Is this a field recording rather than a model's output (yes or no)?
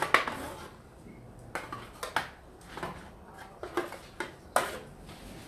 yes